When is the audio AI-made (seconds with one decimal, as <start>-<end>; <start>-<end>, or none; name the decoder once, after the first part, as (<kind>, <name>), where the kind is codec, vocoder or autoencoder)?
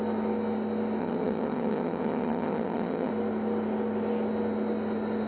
1.0-3.1 (vocoder, HiFi-GAN)